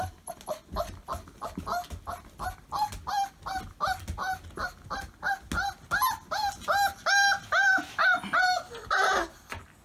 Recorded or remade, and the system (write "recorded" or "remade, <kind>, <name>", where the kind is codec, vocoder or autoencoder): recorded